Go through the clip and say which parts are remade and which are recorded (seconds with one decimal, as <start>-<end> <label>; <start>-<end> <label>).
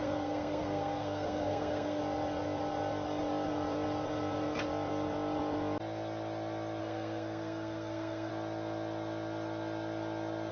0.0-2.0 remade; 2.0-6.8 recorded; 6.8-8.3 remade; 8.3-10.5 recorded